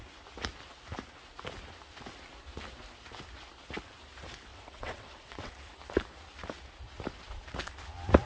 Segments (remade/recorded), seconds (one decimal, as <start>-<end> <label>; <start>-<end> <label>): 0.0-4.5 recorded; 4.5-5.5 remade; 5.5-8.3 recorded